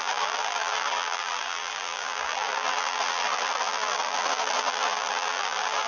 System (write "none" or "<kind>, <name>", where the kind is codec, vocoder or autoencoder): vocoder, BigVGAN v2